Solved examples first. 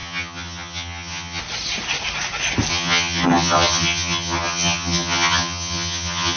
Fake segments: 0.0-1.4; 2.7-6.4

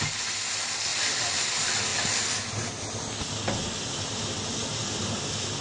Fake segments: none